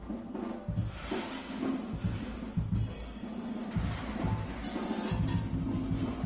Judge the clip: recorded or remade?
recorded